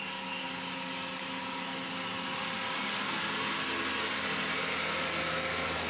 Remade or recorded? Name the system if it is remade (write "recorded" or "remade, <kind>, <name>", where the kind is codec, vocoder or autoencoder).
recorded